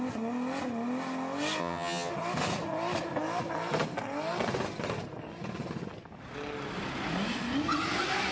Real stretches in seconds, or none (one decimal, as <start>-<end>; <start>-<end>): 0.0-1.6; 2.1-8.3